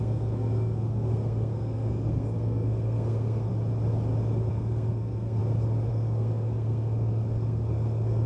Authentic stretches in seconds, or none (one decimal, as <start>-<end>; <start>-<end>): 3.5-4.5; 5.4-5.9